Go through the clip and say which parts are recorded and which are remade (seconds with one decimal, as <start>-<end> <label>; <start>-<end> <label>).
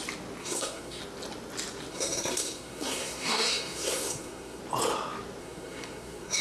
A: 0.0-0.4 recorded; 0.4-1.0 remade; 1.0-1.9 recorded; 1.9-4.6 remade; 4.6-5.4 recorded; 5.4-6.4 remade